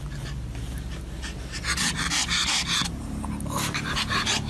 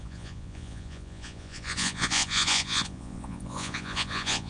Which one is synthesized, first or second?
second